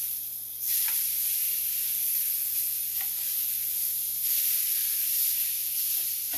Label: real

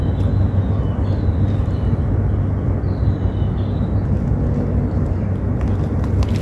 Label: real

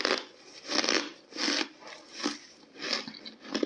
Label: real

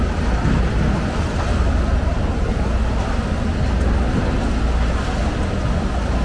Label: real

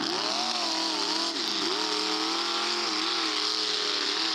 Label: real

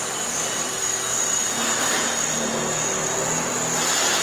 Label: real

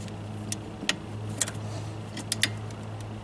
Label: real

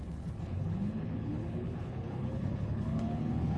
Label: fake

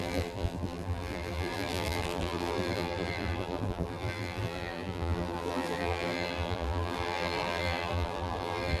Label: fake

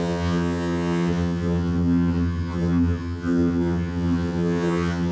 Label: fake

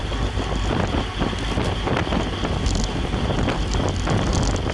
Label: real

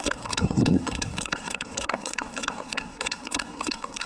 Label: fake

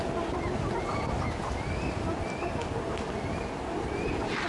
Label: real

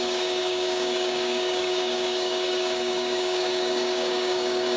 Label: fake